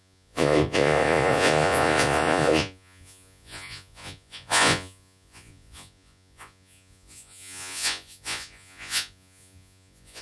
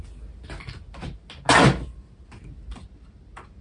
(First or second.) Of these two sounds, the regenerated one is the first